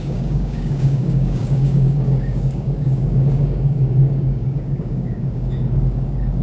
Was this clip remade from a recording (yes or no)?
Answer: yes